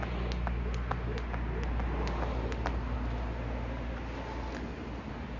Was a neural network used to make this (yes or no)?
no